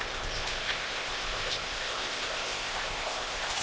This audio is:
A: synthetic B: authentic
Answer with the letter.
A